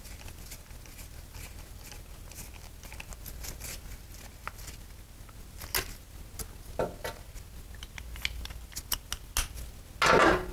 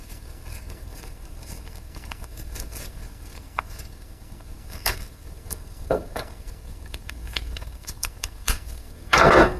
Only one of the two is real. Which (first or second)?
first